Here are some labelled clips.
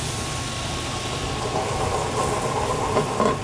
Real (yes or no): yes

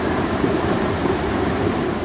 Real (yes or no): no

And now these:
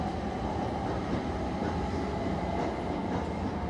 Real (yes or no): yes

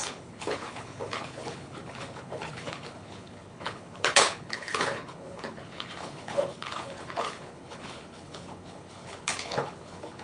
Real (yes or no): no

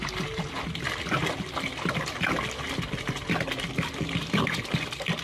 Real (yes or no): yes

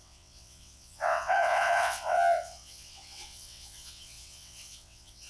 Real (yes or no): no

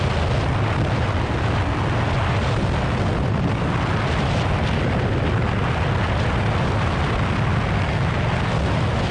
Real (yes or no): yes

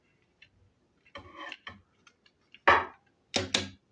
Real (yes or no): yes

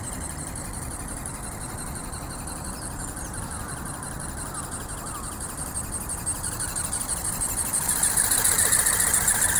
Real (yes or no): no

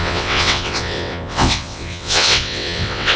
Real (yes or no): no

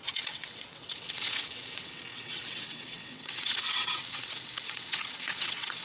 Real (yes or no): no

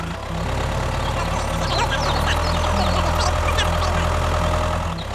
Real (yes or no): yes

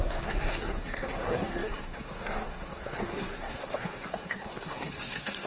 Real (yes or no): no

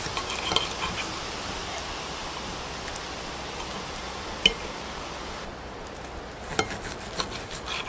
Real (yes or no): yes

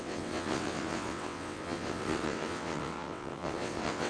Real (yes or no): no